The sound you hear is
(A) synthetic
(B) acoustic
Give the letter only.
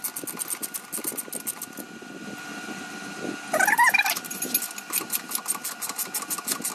B